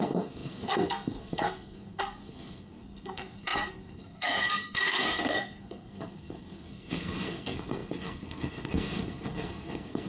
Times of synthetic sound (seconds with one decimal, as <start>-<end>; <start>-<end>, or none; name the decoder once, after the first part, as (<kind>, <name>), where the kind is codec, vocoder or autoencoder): 0.0-10.1 (codec, SNAC)